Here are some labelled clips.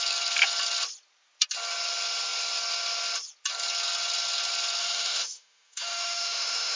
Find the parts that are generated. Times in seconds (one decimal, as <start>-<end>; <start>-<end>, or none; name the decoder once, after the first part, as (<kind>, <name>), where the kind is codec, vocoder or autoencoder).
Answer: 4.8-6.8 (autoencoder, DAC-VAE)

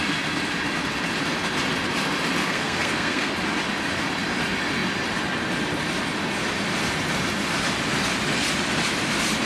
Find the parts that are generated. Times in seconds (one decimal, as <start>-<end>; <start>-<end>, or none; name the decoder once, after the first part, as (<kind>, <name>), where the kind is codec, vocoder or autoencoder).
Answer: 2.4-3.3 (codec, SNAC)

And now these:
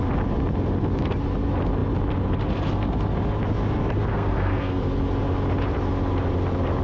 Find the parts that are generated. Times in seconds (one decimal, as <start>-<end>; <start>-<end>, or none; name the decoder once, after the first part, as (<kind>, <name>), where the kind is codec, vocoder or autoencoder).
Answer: 4.1-4.8 (codec, SNAC)

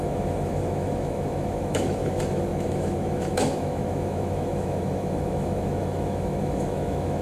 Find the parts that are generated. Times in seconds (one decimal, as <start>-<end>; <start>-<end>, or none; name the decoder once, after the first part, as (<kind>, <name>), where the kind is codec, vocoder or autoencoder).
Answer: 0.0-7.2 (autoencoder, DAC-VAE)

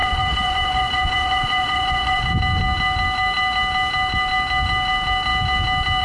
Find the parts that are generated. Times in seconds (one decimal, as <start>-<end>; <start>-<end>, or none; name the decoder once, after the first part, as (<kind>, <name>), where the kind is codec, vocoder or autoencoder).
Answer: 0.0-2.3 (vocoder, Vocos)

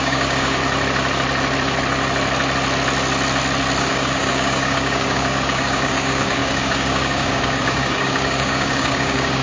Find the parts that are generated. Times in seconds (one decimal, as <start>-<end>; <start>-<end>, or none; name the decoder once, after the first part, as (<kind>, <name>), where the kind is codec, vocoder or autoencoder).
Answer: 0.0-0.6 (codec, DAC); 3.8-9.4

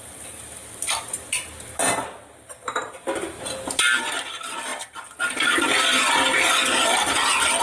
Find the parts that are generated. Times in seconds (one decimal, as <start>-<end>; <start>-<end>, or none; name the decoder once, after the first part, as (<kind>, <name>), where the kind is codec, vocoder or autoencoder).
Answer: 0.0-0.6 (vocoder, BigVGAN v2); 4.0-4.7; 5.5-7.6

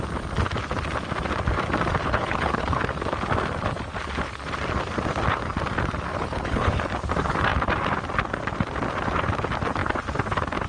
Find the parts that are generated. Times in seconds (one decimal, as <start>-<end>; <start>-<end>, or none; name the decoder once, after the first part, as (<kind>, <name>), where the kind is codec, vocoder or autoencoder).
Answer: 2.0-2.8 (codec, HILCodec); 6.1-6.8